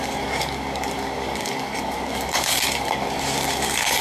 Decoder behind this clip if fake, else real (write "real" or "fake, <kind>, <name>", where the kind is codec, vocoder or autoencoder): fake, codec, DAC